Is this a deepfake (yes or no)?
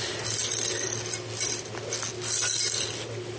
no